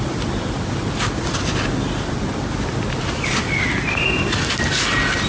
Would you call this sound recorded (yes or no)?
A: yes